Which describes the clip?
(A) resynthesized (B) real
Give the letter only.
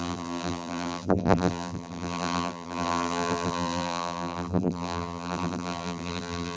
A